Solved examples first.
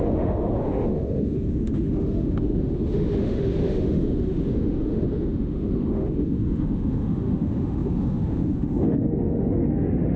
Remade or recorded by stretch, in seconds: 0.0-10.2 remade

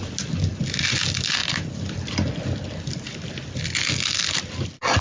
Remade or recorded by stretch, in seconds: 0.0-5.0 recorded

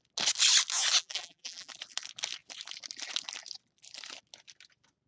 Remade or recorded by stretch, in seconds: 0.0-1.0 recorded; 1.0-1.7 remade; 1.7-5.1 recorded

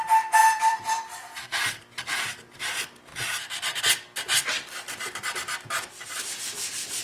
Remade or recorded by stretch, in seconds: 0.0-0.4 recorded; 0.4-2.7 remade; 2.7-3.1 recorded; 3.1-3.8 remade; 3.8-7.0 recorded